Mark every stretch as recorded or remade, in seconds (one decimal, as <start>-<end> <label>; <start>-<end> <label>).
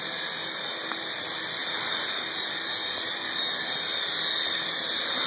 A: 0.0-5.3 recorded